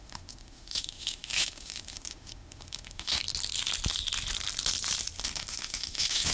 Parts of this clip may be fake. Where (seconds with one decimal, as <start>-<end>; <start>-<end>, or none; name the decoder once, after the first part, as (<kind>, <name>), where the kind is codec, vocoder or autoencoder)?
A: 0.0-3.2 (autoencoder, DAC-VAE); 5.2-6.3